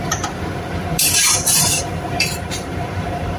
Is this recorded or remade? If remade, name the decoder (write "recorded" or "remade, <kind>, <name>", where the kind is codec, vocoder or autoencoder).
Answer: remade, vocoder, BigVGAN v2